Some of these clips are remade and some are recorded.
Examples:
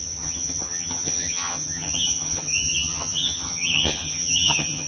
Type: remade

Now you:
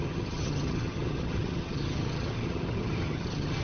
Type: remade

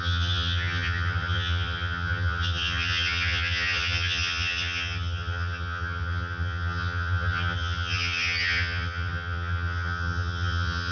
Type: remade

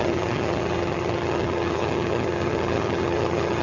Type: remade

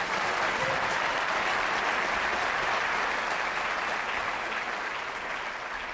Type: recorded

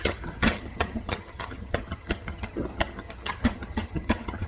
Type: remade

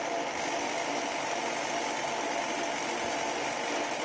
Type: recorded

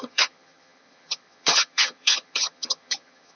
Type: remade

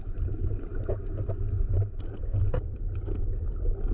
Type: recorded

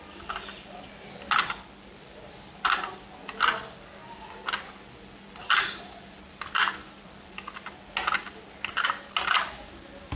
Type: recorded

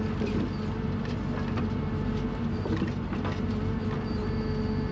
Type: recorded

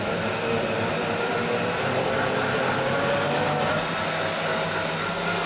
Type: recorded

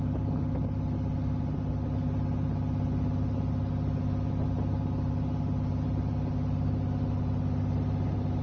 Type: recorded